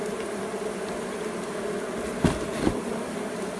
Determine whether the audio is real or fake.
real